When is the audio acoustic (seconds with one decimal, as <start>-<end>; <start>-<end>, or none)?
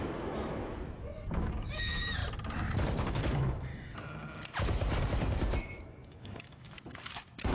2.2-3.1; 3.7-5.6